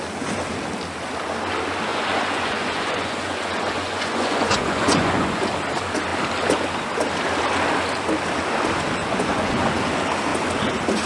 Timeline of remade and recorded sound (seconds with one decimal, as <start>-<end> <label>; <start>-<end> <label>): 0.0-1.9 recorded; 1.9-5.5 remade; 5.5-9.0 recorded; 9.0-9.7 remade; 9.7-11.1 recorded